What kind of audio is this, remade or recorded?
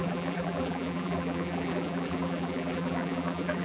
remade